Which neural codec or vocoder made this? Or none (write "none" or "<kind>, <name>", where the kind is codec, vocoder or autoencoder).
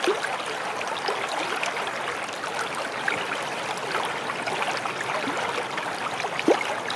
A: none